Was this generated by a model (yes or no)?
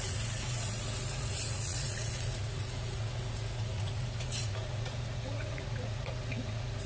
yes